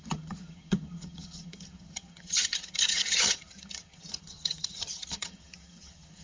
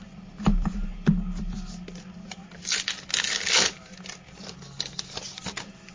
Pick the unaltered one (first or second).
second